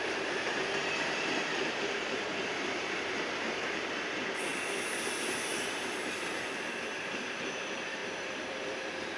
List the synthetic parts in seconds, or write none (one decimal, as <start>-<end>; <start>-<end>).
0.0-4.5; 5.5-9.2